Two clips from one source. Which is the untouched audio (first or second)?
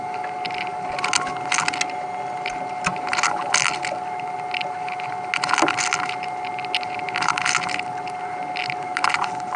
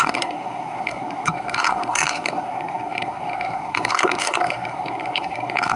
first